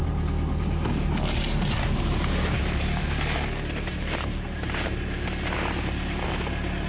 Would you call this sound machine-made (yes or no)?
no